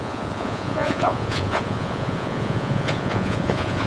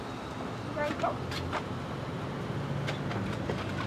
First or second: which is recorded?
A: second